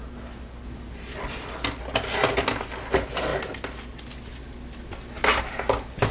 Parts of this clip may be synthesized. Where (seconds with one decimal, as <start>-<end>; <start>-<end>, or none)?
none